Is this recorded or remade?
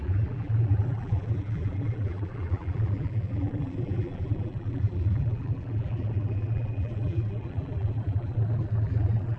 remade